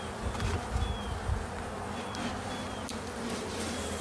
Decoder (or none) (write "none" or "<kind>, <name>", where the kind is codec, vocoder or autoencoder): none